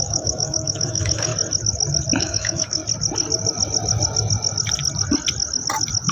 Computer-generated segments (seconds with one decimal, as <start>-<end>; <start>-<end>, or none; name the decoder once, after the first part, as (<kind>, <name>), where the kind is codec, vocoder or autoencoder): 0.0-1.3 (autoencoder, DAC-VAE); 2.2-2.8